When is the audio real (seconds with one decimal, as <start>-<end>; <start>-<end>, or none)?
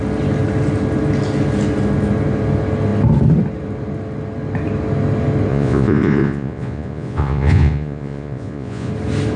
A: 0.0-5.5; 8.9-9.4